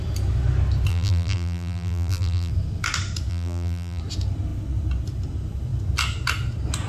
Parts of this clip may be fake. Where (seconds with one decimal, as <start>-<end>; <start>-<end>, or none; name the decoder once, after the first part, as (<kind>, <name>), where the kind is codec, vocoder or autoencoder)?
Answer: 0.9-2.5 (vocoder, BigVGAN v2); 3.3-4.0

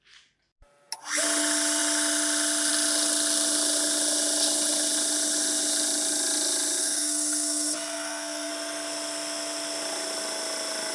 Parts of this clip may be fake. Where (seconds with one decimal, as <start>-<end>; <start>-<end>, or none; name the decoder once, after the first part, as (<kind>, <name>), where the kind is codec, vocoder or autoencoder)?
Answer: 6.8-8.5 (codec, SNAC)

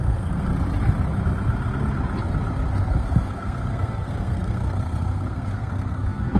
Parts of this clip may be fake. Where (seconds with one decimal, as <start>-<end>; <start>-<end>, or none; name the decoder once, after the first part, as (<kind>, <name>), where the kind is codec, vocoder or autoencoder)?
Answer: 0.0-0.5 (codec, SNAC); 2.7-6.4

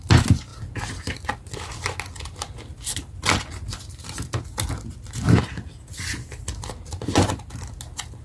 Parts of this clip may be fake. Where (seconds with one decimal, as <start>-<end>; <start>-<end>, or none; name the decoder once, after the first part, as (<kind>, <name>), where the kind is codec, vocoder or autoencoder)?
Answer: none

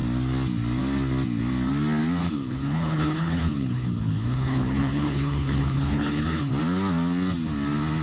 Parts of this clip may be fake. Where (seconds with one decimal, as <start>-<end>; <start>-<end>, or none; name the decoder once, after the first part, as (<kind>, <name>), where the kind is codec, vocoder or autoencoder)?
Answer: 2.2-6.5 (codec, HILCodec)

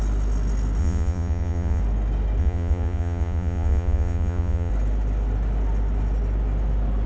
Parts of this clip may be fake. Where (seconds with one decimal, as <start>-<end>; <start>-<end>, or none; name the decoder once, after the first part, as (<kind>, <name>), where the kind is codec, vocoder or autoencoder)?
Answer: 0.8-1.8 (vocoder, Vocos); 2.4-4.7